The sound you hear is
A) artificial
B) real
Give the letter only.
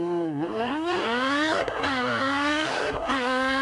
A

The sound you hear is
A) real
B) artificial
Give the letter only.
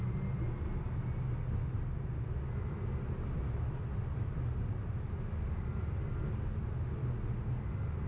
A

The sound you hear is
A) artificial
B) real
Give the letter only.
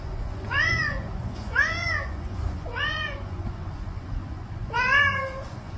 A